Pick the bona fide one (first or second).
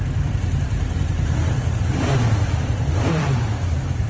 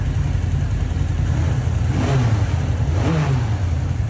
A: second